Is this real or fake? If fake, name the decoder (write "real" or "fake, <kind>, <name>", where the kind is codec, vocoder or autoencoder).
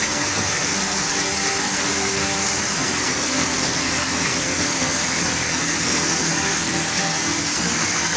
fake, codec, SNAC